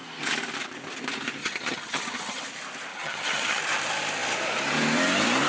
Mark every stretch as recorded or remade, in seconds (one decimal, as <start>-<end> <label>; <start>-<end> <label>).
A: 0.0-1.4 recorded; 1.4-2.4 remade; 2.4-2.9 recorded; 2.9-3.6 remade; 3.6-5.5 recorded